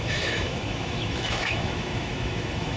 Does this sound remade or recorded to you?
remade